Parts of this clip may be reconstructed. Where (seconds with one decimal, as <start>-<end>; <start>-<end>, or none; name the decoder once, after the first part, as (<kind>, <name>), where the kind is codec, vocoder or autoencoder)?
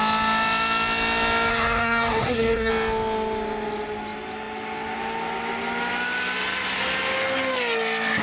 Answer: 1.5-2.7 (codec, SNAC)